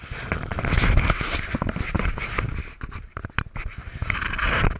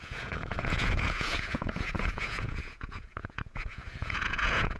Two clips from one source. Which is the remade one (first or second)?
second